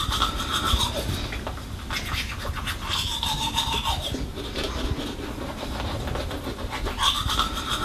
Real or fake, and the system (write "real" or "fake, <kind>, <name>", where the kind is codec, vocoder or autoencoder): real